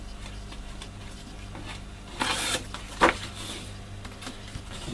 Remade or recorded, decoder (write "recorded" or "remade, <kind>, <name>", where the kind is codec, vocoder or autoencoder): recorded